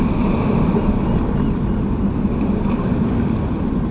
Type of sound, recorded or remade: recorded